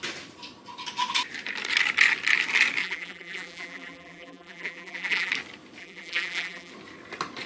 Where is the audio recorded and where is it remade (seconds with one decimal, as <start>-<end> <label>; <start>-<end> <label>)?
0.0-2.8 recorded; 2.8-5.3 remade; 5.3-5.8 recorded; 5.8-6.7 remade; 6.7-7.5 recorded